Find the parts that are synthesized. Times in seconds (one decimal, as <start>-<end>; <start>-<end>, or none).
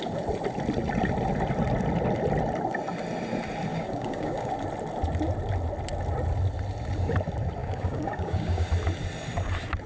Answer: 3.7-4.5; 7.6-8.7